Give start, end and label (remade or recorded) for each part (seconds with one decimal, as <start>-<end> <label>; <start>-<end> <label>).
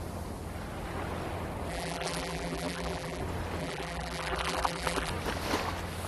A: 0.0-1.7 recorded; 1.7-3.2 remade; 3.2-3.6 recorded; 3.6-5.1 remade; 5.1-6.1 recorded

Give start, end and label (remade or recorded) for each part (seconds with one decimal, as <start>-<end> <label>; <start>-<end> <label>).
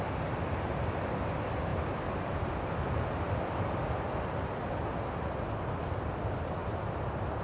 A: 0.0-1.7 recorded; 1.7-2.7 remade; 2.7-7.4 recorded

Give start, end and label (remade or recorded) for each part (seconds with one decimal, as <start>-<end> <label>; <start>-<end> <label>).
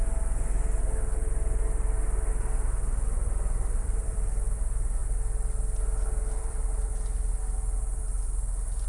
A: 0.0-2.3 recorded; 2.3-5.0 remade; 5.0-6.4 recorded; 6.4-6.9 remade; 6.9-8.0 recorded; 8.0-8.9 remade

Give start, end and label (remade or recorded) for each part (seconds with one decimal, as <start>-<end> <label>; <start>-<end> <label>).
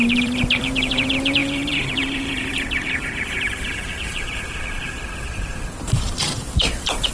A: 0.0-7.1 remade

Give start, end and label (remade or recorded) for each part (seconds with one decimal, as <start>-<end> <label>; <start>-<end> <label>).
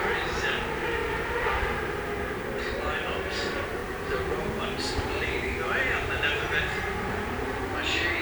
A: 0.0-3.8 remade; 3.8-6.6 recorded; 6.6-8.2 remade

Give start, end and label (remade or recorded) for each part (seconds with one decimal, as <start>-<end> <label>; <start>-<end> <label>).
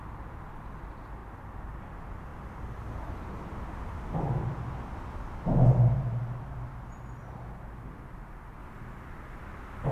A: 0.0-1.2 recorded; 1.2-1.9 remade; 1.9-9.9 recorded